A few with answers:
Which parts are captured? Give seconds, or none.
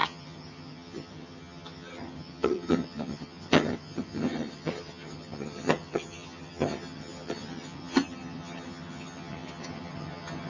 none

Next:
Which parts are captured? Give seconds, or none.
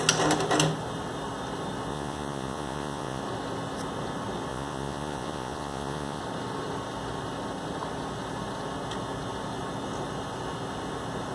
0.0-1.9; 3.2-4.5; 6.2-11.3